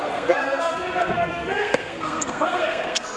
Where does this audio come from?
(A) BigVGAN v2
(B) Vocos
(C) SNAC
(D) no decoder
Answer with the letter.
C